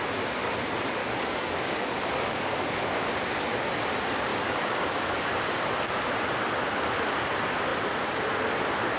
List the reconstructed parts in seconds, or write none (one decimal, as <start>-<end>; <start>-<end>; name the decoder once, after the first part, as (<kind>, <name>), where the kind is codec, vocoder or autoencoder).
1.0-3.1 (codec, DAC); 4.3-5.3